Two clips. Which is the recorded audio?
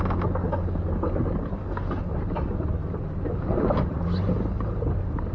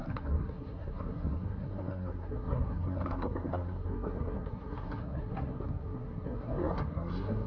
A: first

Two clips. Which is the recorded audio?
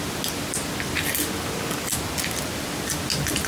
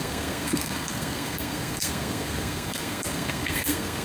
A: first